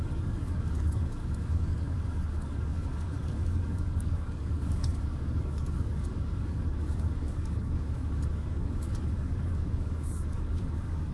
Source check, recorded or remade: remade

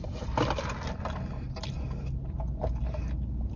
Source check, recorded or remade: recorded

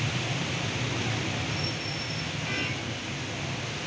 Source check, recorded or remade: recorded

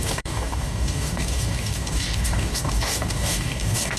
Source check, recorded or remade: remade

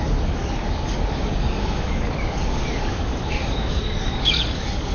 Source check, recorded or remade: remade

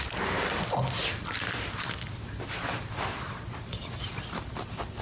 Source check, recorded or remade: recorded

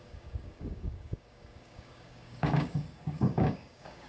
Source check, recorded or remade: remade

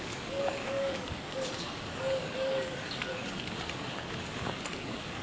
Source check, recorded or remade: remade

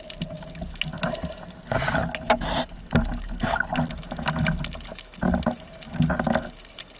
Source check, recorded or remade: recorded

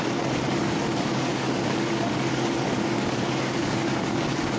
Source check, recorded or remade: remade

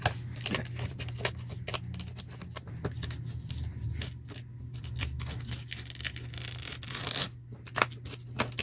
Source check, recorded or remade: recorded